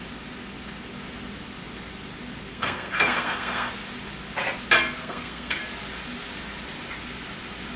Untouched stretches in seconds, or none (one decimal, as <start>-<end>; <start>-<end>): 0.0-2.5; 3.7-5.0; 5.6-7.8